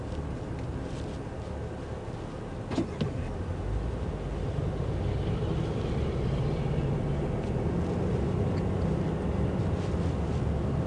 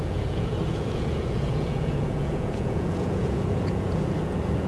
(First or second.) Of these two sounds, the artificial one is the second